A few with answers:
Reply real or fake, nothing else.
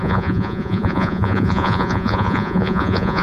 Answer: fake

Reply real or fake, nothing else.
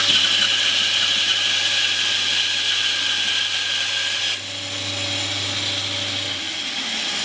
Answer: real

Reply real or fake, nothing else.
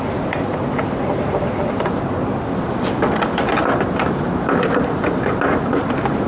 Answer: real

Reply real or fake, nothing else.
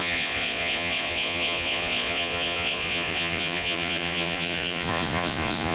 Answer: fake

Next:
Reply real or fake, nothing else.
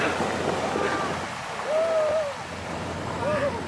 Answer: real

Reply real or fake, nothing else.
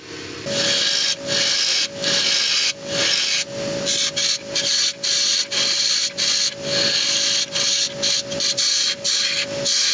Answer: real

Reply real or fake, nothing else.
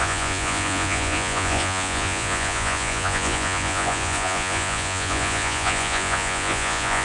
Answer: fake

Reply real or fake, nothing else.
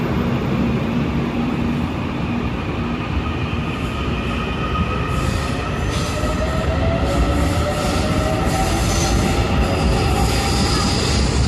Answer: real